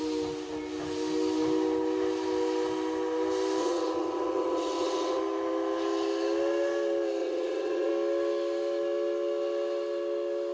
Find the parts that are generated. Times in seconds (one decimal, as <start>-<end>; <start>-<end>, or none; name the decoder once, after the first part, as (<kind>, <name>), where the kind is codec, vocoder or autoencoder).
3.6-5.2 (vocoder, WaveNeXt); 7.2-7.9